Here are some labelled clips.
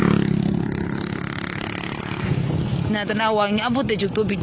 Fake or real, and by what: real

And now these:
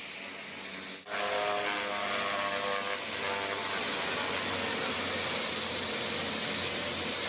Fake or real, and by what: real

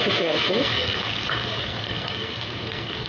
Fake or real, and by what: fake, codec, SNAC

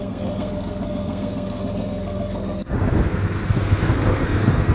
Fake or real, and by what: fake, codec, SNAC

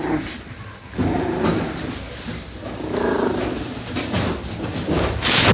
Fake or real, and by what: real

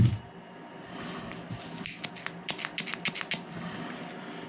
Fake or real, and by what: real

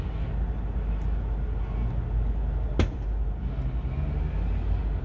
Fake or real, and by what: real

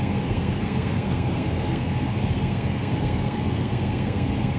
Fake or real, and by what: fake, codec, SNAC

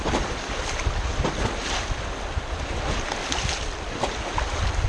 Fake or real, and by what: real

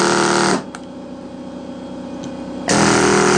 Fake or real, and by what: real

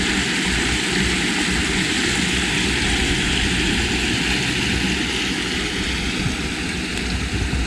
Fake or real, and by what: real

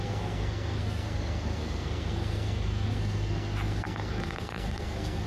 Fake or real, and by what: fake, codec, SNAC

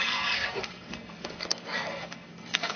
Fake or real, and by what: fake, codec, SNAC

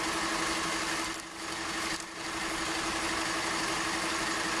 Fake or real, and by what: real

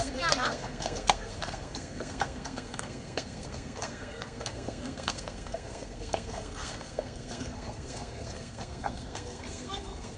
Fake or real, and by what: fake, codec, SNAC